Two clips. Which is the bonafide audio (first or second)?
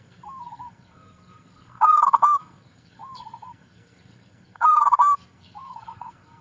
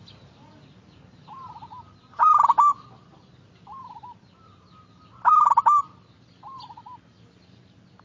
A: second